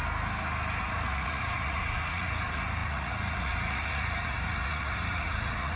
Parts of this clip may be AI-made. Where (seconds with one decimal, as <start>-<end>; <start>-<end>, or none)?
0.8-5.8